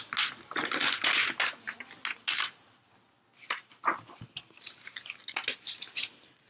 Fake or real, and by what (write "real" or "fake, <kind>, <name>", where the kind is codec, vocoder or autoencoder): real